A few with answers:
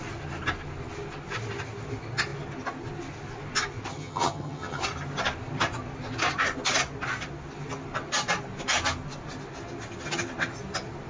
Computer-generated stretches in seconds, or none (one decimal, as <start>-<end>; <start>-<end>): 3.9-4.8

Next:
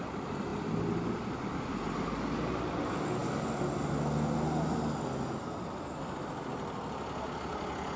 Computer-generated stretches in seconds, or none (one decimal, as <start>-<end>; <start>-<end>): none

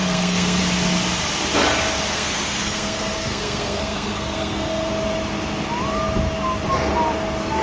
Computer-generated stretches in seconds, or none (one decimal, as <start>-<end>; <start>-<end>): 0.0-0.6; 2.1-4.9

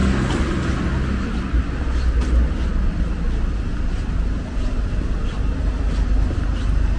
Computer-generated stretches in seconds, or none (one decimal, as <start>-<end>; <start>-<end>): none

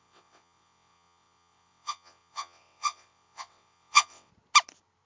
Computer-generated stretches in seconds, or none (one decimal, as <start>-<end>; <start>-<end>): 0.0-4.3

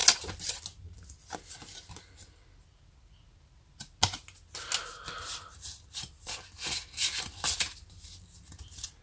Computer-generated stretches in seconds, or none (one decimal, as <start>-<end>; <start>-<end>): none

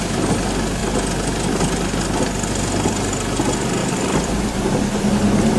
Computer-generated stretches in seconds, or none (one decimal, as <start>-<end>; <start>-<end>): 3.8-4.4

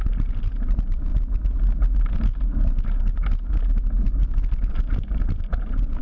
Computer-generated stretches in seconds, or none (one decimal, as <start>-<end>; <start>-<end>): 0.0-1.1; 4.7-6.0